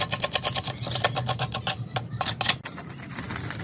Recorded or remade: recorded